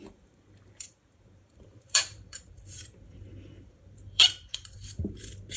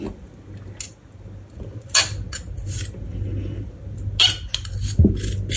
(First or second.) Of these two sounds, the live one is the second